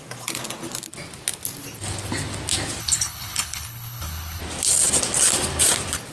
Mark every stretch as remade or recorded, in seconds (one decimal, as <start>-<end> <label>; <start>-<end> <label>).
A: 0.0-2.8 recorded; 2.8-4.4 remade; 4.4-6.1 recorded